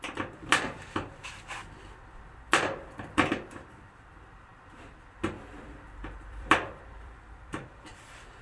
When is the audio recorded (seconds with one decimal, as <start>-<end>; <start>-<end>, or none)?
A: 1.6-2.2; 4.5-5.6